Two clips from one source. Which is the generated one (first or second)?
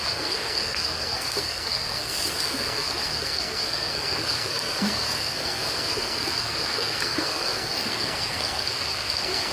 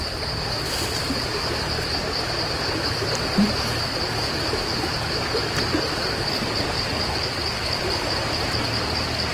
first